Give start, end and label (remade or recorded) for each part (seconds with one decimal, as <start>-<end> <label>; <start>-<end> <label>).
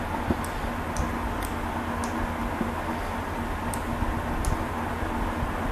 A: 0.0-5.7 recorded